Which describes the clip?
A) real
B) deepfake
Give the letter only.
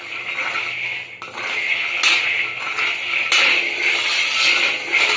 A